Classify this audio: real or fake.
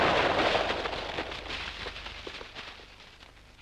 real